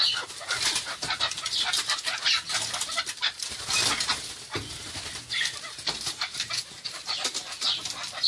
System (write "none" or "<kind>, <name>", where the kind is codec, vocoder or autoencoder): none